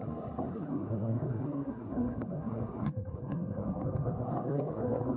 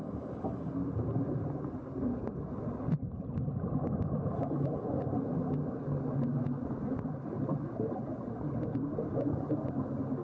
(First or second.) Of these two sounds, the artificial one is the first